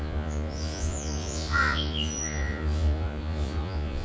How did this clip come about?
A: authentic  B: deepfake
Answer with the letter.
B